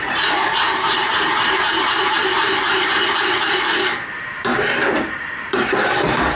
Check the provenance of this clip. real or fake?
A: fake